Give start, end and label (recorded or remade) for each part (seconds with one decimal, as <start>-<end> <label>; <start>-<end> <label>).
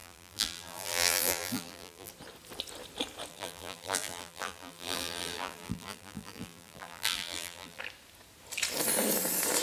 0.0-2.1 remade; 2.1-3.3 recorded; 3.3-7.8 remade; 7.8-9.6 recorded